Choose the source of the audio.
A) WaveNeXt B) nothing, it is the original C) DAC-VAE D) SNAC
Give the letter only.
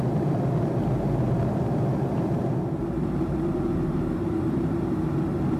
B